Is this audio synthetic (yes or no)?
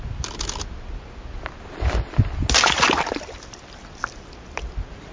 no